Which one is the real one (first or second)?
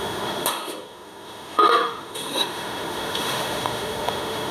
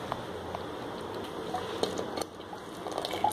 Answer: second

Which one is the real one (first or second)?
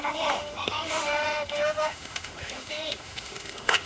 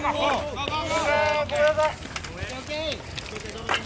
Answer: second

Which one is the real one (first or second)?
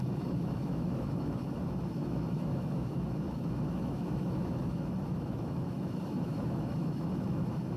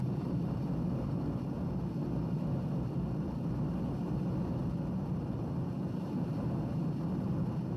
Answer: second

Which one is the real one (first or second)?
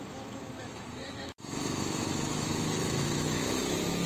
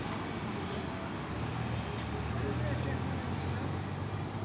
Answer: second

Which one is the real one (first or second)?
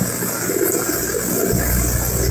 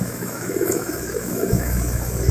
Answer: first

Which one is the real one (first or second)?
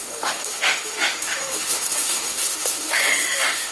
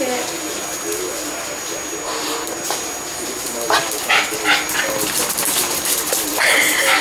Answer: second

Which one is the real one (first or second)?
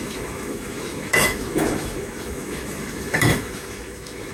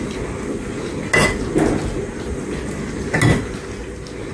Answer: second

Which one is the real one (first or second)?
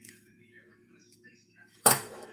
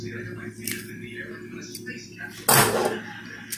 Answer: second